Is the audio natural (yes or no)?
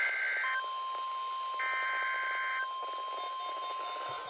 yes